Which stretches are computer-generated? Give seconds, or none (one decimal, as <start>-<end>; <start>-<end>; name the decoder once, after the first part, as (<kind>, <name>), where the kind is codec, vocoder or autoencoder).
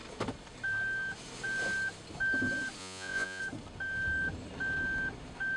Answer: 2.8-3.4 (vocoder, Vocos)